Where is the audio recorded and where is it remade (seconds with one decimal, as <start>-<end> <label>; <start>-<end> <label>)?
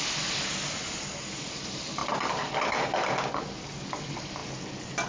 0.0-5.1 recorded